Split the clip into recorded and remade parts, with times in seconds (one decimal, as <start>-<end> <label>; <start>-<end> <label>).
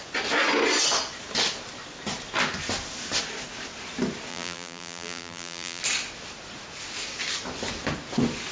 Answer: 0.0-4.3 recorded; 4.3-5.8 remade; 5.8-8.5 recorded